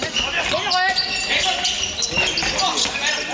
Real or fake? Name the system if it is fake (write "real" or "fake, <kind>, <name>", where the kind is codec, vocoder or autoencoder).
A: real